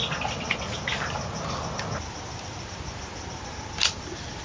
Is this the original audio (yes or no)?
yes